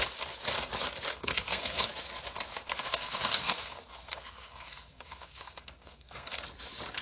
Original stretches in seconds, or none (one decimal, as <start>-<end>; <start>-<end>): 0.0-1.1; 1.9-2.5; 6.4-7.0